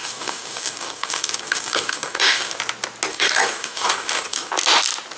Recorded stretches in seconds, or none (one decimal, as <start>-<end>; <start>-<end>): 2.6-3.1; 4.5-5.2